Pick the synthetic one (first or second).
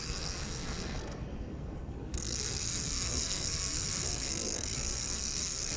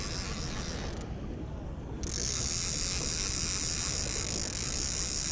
first